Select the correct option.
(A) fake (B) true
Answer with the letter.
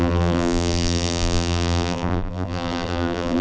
A